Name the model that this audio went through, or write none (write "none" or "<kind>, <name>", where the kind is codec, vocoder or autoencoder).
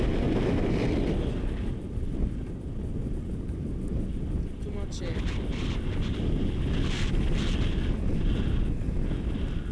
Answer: none